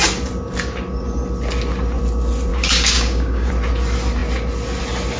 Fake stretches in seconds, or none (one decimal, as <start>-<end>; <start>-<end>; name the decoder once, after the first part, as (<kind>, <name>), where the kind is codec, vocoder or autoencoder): 2.5-3.5 (codec, DAC)